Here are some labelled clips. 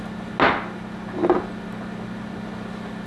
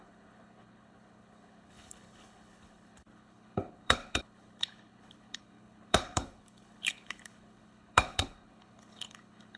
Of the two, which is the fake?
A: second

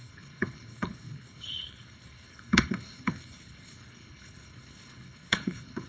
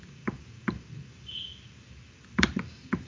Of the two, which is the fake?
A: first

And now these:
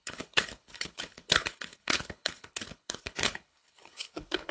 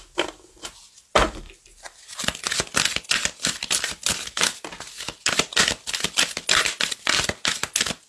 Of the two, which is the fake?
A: first